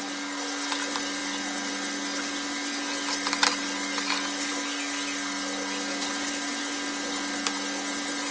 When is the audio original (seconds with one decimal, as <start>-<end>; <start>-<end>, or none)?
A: 0.0-8.3